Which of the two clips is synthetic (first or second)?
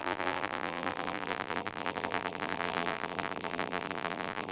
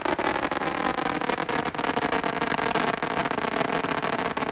first